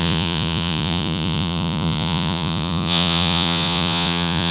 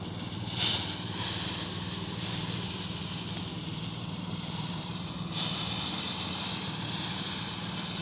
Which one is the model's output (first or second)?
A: first